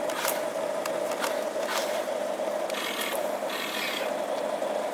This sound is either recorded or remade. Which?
recorded